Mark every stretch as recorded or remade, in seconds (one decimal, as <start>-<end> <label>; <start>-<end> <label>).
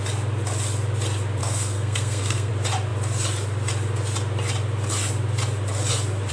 0.0-1.4 recorded; 1.4-2.5 remade; 2.5-6.3 recorded